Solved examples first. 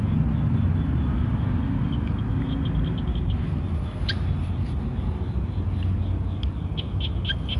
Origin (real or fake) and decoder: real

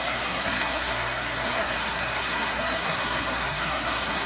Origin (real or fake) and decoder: fake, codec, SNAC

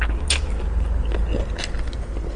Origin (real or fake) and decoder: real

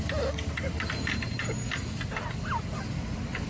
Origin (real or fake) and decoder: real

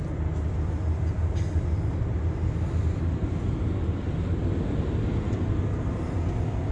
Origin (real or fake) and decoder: real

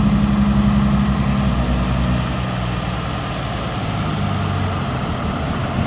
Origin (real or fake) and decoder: real